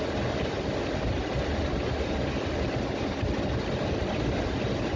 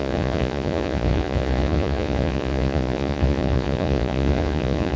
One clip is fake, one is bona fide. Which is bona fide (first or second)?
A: first